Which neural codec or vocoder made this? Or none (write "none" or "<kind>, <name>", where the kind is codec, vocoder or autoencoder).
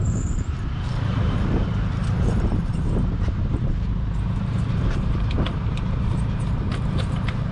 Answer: vocoder, BigVGAN v2